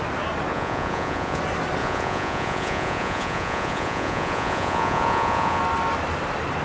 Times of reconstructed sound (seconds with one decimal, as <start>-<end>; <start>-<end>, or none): 0.5-1.4; 1.8-5.6